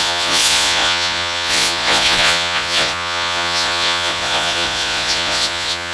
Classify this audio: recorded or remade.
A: remade